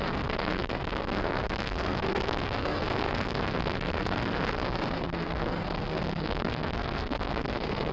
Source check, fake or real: fake